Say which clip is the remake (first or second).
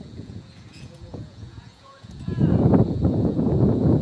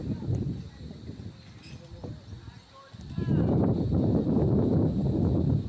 first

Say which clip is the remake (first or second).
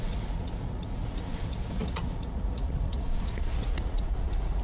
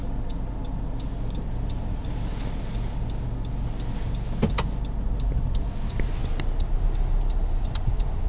first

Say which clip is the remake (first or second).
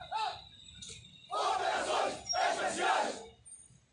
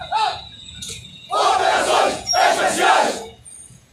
second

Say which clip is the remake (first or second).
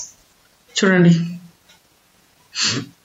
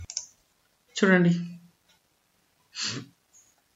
first